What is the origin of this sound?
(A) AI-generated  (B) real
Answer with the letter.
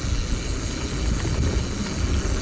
B